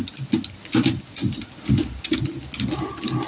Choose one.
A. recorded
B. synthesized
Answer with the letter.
A